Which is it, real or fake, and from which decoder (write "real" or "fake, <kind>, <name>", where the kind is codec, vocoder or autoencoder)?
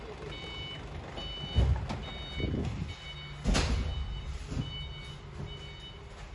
real